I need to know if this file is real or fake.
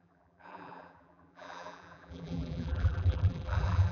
fake